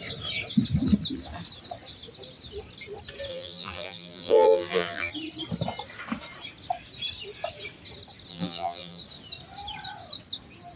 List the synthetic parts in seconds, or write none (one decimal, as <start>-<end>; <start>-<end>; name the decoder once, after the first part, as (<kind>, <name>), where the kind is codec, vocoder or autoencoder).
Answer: 3.3-5.1 (vocoder, BigVGAN v2); 8.3-9.0